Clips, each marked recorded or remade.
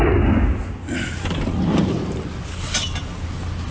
recorded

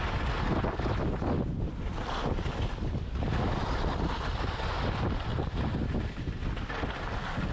recorded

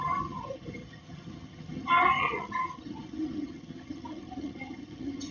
remade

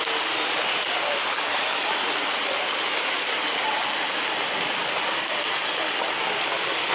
recorded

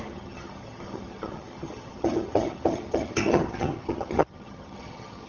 remade